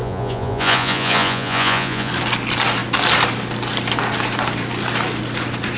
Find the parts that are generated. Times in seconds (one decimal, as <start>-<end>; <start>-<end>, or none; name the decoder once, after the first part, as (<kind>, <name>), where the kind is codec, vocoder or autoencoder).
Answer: 0.0-2.1 (vocoder, Vocos)